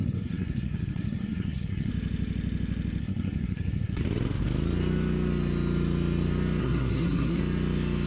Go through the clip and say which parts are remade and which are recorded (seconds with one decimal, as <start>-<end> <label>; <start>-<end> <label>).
0.0-1.9 remade; 1.9-3.0 recorded; 3.0-4.0 remade; 4.0-6.6 recorded; 6.6-7.4 remade; 7.4-8.1 recorded